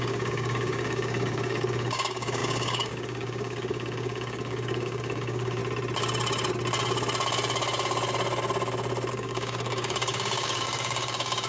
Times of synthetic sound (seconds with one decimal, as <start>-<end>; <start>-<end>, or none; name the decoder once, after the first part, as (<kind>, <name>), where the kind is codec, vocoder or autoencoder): 0.0-5.6 (codec, DAC); 9.1-11.5